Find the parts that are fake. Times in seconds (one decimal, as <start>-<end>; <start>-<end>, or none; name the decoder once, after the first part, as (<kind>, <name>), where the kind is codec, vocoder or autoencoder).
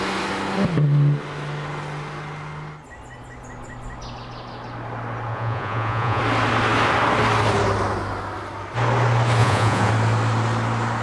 5.3-6.2 (vocoder, Vocos); 9.4-9.9